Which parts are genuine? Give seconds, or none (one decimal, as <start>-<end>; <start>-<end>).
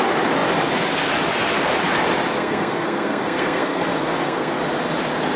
0.0-2.4; 4.6-5.4